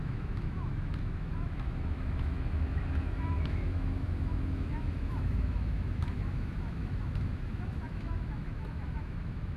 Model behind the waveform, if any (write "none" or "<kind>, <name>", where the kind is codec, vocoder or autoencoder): autoencoder, DAC-VAE